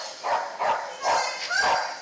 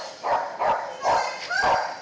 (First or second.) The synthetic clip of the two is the second